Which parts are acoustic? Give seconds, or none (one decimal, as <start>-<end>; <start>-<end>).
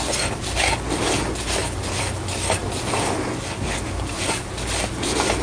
0.0-5.4